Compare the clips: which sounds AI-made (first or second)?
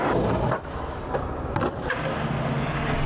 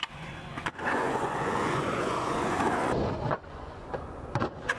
second